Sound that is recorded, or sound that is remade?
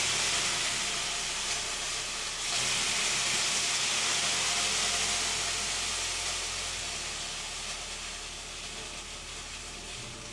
recorded